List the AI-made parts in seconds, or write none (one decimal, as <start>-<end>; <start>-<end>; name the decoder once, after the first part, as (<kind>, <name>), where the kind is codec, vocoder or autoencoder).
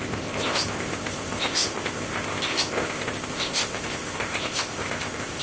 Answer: 0.0-5.4 (codec, ZipCodec)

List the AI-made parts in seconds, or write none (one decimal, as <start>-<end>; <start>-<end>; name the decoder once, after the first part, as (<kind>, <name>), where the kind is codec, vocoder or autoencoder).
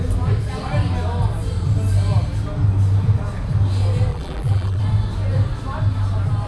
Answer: 4.1-4.8 (vocoder, BigVGAN v2)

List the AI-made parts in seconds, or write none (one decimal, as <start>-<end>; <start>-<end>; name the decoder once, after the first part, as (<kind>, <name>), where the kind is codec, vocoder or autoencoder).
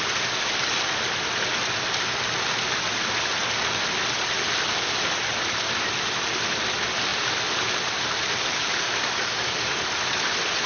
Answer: 8.7-9.7 (codec, DAC)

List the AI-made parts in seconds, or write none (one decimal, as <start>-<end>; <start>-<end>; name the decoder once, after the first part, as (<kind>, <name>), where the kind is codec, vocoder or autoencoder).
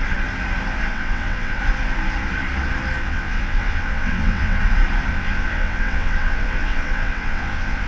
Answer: 0.9-1.6 (vocoder, WaveNeXt); 3.0-4.6; 5.1-7.9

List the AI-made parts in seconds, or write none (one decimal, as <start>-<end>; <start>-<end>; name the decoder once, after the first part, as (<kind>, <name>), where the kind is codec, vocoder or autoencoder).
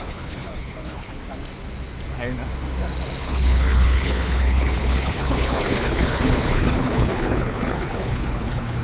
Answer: 0.0-1.2 (codec, HILCodec); 3.2-8.8